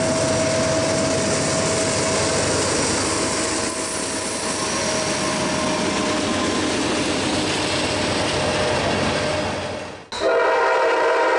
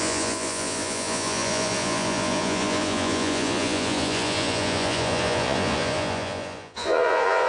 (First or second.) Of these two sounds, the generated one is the second